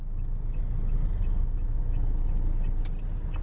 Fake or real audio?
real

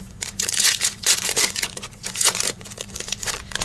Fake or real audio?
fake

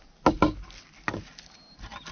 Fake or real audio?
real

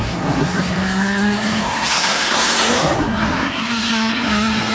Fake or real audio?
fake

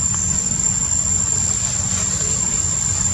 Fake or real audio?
real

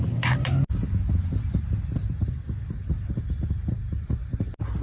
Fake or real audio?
real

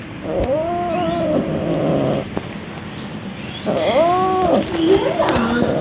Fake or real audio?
real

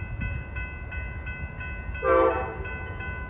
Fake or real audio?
real